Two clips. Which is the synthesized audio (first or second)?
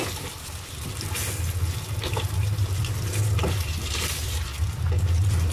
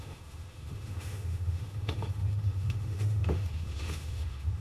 second